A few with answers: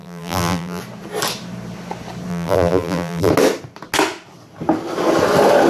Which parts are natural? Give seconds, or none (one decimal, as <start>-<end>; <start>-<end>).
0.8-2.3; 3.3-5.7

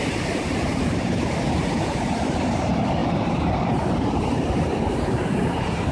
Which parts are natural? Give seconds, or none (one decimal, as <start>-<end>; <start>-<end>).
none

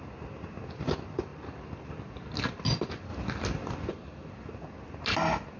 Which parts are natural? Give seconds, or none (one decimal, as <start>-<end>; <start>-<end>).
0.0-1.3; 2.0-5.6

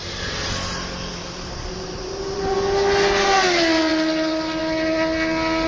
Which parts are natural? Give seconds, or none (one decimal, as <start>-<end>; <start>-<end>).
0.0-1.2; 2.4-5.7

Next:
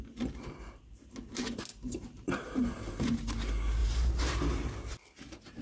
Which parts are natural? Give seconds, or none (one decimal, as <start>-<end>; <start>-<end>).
0.0-1.7; 2.3-3.8; 4.3-5.6

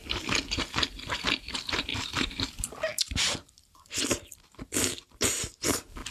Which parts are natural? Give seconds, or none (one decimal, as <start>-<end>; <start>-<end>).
none

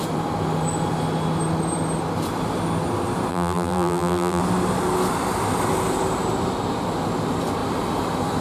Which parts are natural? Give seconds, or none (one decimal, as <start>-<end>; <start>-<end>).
0.0-3.3; 4.4-8.4

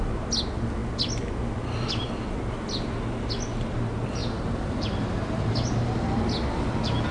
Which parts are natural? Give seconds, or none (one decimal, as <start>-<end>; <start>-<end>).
0.0-4.2; 6.2-7.1